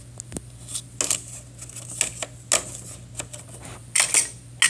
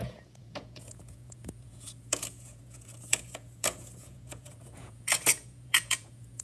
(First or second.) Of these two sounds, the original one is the first